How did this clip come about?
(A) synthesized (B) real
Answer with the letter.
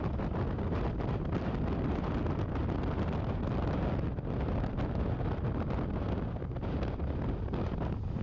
B